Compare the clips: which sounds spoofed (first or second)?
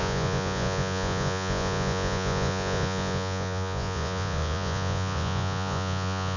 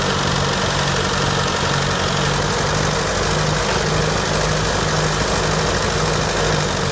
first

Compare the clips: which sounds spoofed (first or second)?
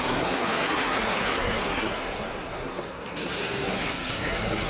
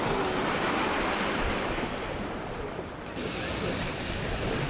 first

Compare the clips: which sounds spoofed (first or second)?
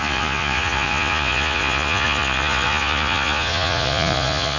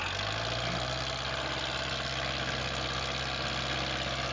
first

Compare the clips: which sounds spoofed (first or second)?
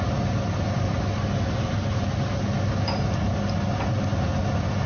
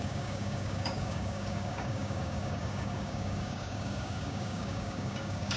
second